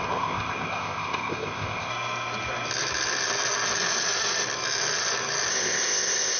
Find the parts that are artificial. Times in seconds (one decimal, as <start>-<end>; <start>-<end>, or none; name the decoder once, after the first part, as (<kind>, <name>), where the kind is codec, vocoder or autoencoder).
0.0-1.9 (codec, ZipCodec); 5.5-6.4